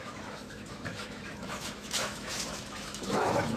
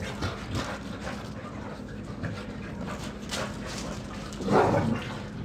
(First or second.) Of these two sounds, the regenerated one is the first